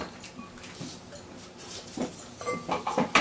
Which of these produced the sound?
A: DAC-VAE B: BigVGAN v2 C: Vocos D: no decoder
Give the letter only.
D